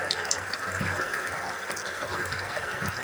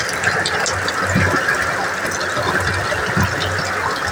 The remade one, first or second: first